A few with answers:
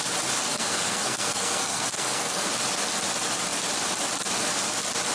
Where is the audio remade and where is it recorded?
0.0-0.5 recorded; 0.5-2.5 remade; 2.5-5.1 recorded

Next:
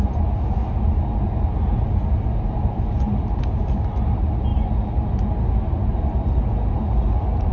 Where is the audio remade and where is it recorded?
0.0-7.5 recorded

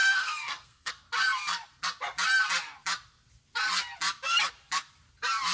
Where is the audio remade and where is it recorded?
0.0-0.9 remade; 0.9-5.5 recorded

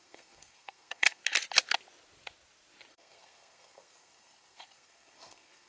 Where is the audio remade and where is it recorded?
0.0-1.2 remade; 1.2-2.9 recorded; 2.9-5.7 remade

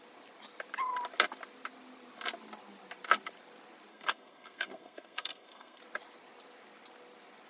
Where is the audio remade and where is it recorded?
0.0-3.9 recorded; 3.9-5.8 remade; 5.8-7.5 recorded

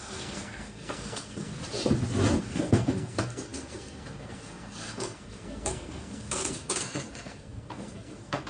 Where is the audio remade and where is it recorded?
0.0-1.6 remade; 1.6-2.4 recorded; 2.4-8.5 remade

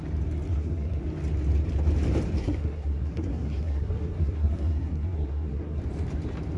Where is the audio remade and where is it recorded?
0.0-0.5 recorded; 0.5-1.0 remade; 1.0-2.4 recorded; 2.4-5.8 remade; 5.8-6.6 recorded

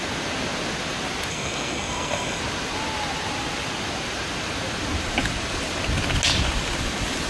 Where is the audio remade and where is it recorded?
0.0-1.3 recorded; 1.3-2.4 remade; 2.4-7.3 recorded